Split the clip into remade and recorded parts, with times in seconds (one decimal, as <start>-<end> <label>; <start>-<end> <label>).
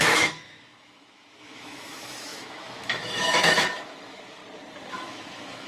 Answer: 0.0-4.4 remade; 4.4-4.9 recorded; 4.9-5.7 remade